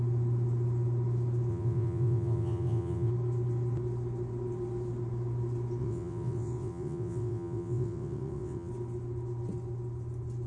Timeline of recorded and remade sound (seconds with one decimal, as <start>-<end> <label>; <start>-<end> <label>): 0.0-1.5 recorded; 1.5-3.1 remade; 3.1-5.8 recorded; 5.8-8.7 remade; 8.7-10.5 recorded